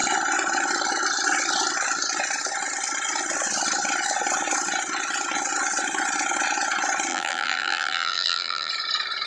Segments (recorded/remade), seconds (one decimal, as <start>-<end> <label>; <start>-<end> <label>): 0.0-7.1 recorded; 7.1-8.7 remade; 8.7-9.3 recorded